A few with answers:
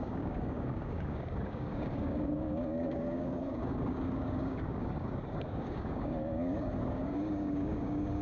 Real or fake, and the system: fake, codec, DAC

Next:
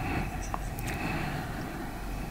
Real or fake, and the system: real